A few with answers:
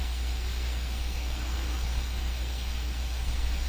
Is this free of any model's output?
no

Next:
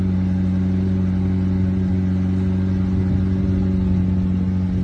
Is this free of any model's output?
yes